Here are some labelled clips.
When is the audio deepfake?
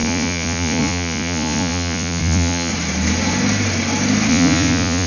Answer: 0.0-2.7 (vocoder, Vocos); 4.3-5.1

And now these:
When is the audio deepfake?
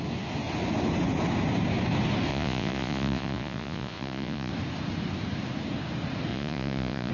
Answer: 2.3-4.5 (vocoder, Vocos); 6.3-7.1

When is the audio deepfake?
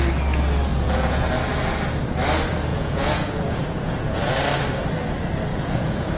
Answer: 0.7-1.3 (vocoder, Vocos); 2.7-4.3; 5.5-6.2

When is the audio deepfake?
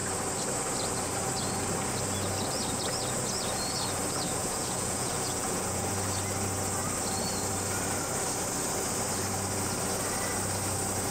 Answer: 4.4-5.9 (vocoder, Vocos)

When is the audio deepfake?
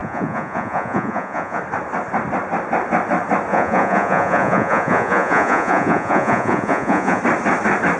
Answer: 0.0-1.6 (vocoder, Vocos); 3.5-7.2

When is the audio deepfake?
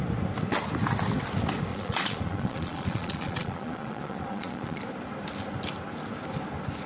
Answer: 1.7-4.8 (vocoder, Vocos)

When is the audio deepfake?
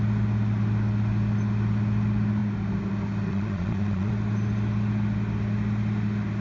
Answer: 3.3-4.1 (vocoder, Vocos)